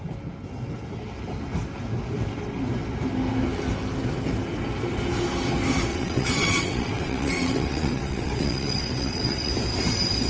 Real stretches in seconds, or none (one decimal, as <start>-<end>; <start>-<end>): 0.0-5.9; 9.5-10.3